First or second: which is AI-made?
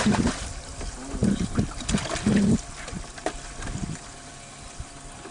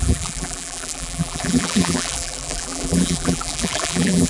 second